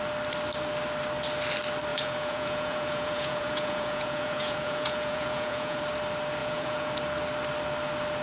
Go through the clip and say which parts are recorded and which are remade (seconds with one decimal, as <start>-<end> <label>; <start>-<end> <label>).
0.0-1.9 recorded; 1.9-5.8 remade; 5.8-6.4 recorded; 6.4-6.9 remade; 6.9-8.2 recorded